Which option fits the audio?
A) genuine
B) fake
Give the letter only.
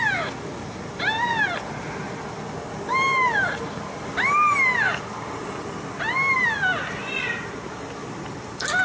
A